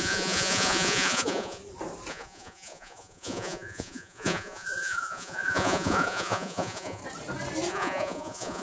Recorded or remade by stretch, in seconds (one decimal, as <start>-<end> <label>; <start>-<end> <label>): 0.0-1.6 remade; 1.6-2.1 recorded; 2.1-7.0 remade; 7.0-7.7 recorded; 7.7-8.6 remade